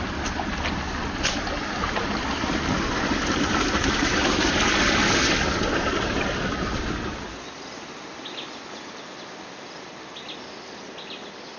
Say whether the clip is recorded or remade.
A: recorded